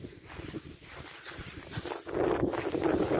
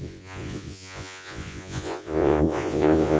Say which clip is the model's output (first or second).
second